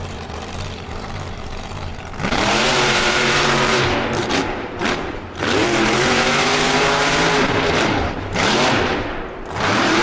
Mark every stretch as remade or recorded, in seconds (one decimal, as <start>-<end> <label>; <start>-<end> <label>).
0.0-10.0 remade